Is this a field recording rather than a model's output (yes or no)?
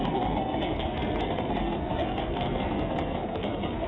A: no